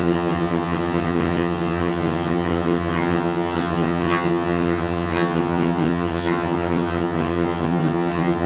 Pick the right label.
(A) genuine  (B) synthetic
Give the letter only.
B